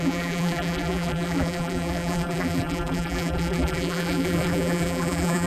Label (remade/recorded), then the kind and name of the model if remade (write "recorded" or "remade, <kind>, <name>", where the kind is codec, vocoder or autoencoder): remade, vocoder, BigVGAN v2